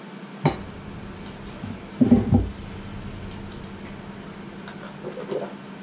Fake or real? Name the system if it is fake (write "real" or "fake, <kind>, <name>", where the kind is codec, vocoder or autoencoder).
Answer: real